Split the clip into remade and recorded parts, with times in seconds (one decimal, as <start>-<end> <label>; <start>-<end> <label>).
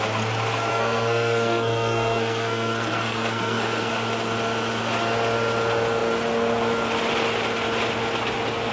0.0-0.7 recorded; 0.7-3.9 remade; 3.9-8.7 recorded